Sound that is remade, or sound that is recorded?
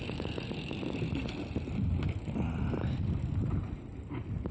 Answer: recorded